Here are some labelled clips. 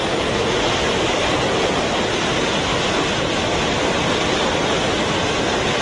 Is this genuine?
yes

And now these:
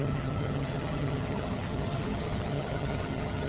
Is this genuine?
no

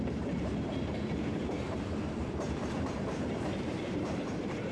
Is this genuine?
no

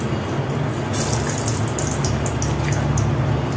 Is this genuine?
yes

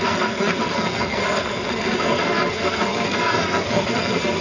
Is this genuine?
no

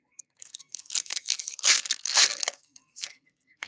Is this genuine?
no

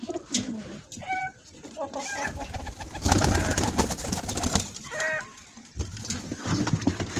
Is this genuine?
no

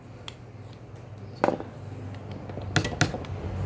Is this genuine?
yes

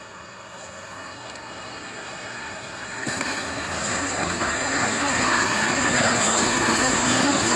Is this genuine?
no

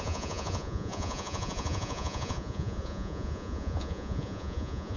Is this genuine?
no